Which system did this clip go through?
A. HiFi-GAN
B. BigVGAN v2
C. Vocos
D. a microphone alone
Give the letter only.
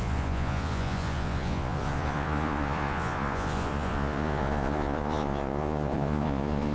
C